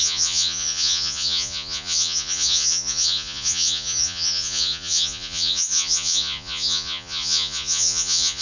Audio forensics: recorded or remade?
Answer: remade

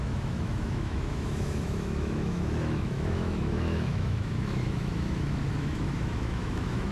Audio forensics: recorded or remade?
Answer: remade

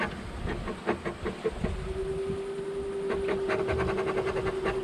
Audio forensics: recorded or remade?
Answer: recorded